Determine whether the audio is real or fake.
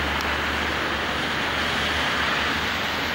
real